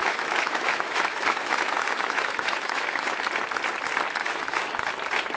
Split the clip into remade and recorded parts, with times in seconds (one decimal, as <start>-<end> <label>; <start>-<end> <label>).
0.0-3.2 remade; 3.2-4.2 recorded; 4.2-4.9 remade; 4.9-5.4 recorded